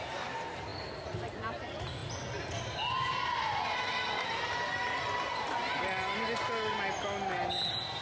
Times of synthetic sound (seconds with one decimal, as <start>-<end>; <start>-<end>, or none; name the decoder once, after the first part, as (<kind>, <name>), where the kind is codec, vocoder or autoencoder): none